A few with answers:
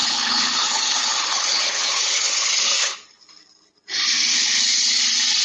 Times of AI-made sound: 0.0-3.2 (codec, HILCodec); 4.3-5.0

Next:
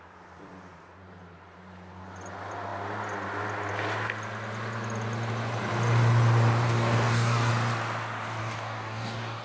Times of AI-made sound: 6.7-7.5 (codec, DAC); 8.4-9.4